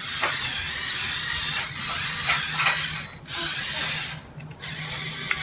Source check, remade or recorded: recorded